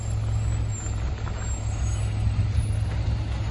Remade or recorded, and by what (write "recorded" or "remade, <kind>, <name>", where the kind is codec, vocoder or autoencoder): recorded